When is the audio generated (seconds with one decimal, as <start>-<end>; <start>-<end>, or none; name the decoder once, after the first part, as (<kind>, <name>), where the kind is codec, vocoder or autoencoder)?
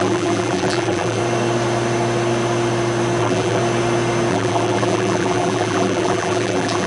0.0-1.2 (vocoder, BigVGAN v2); 3.2-3.6; 4.3-6.9